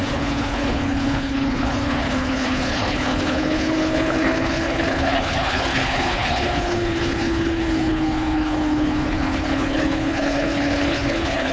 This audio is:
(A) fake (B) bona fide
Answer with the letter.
A